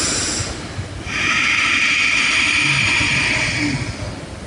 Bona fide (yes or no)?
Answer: yes